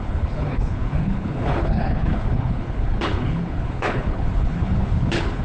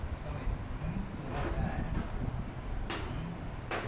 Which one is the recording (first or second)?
second